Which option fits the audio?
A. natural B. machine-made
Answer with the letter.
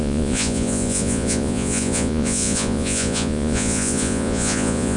B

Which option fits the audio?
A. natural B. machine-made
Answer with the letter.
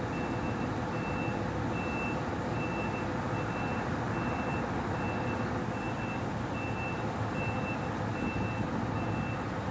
A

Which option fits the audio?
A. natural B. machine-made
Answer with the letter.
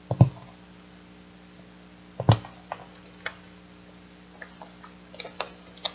A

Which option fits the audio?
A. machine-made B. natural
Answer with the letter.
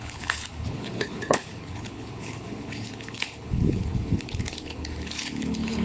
A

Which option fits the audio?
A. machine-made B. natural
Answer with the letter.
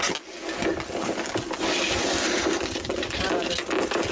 B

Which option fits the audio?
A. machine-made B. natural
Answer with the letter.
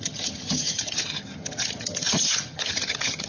A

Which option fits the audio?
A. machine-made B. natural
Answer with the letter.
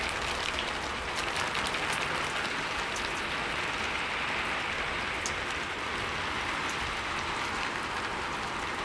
B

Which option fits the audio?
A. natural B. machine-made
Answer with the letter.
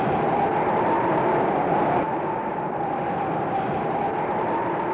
A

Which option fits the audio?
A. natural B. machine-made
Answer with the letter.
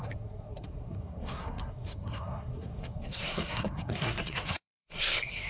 B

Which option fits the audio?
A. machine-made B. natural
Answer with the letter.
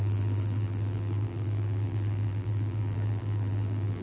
A